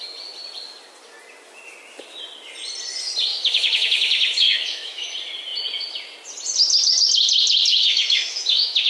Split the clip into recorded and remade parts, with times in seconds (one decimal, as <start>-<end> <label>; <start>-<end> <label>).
0.0-3.3 recorded; 3.3-5.1 remade; 5.1-7.7 recorded; 7.7-8.9 remade